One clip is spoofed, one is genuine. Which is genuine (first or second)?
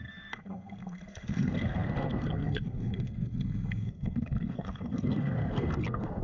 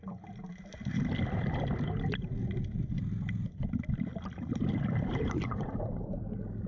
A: second